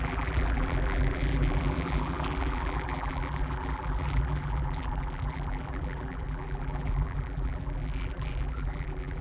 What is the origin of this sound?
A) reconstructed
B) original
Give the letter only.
A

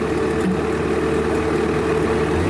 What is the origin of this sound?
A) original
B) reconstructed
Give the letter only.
A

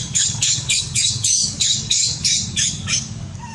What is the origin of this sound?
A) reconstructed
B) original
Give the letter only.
A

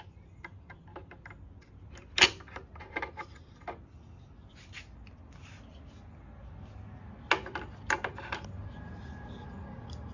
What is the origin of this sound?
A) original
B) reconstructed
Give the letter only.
A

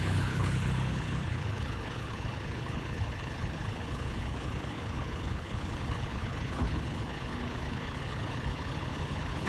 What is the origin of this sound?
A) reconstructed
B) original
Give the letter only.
A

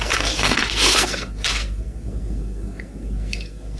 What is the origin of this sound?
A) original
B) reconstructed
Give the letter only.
B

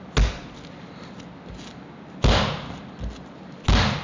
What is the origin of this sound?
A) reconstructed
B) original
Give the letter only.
B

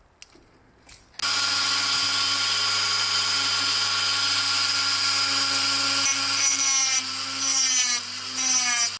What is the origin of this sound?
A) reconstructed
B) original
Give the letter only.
B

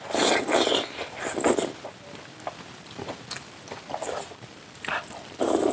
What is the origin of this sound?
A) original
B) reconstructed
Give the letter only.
B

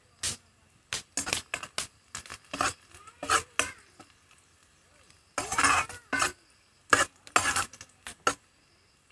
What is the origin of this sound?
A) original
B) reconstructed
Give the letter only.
A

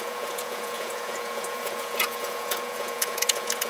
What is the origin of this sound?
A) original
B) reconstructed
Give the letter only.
B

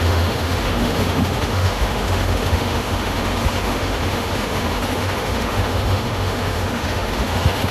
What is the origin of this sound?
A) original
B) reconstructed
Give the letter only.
B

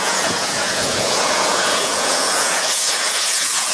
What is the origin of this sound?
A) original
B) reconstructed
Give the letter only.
B